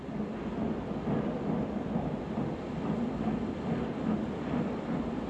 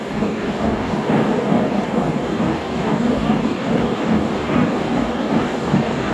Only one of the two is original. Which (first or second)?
first